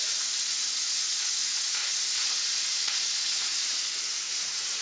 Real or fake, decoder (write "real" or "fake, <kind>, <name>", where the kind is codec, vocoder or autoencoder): fake, vocoder, Vocos